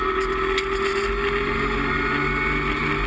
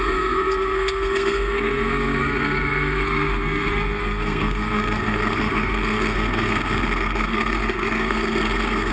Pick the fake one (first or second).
second